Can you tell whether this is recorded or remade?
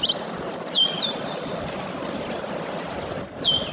recorded